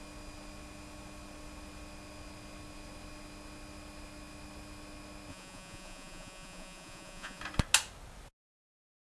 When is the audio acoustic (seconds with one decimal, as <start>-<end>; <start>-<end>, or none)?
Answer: 0.0-5.3; 7.4-9.0